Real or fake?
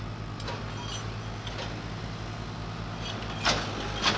real